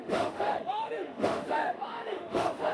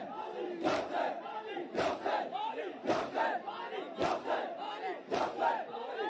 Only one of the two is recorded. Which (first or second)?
second